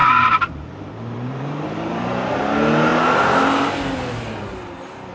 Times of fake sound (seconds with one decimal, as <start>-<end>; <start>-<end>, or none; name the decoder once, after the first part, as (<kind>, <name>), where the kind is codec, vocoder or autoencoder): 0.0-2.4 (vocoder, BigVGAN v2)